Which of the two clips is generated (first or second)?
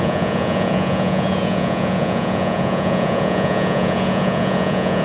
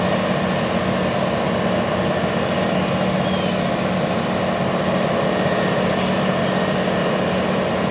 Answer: first